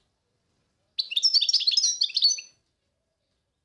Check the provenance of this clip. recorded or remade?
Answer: recorded